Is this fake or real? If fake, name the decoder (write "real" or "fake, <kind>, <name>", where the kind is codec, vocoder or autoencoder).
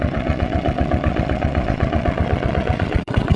fake, vocoder, Vocos